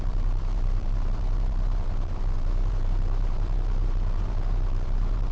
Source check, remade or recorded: remade